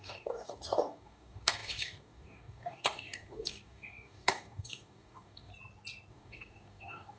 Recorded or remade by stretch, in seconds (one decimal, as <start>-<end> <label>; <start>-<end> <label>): 0.0-5.5 remade; 5.5-6.1 recorded; 6.1-7.2 remade